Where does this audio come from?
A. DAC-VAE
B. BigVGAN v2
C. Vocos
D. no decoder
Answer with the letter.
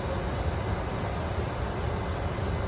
D